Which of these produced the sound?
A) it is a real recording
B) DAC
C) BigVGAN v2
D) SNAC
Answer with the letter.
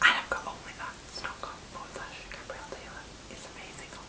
A